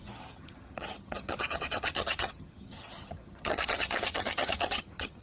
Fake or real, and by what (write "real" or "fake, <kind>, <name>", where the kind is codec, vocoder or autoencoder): fake, vocoder, HiFi-GAN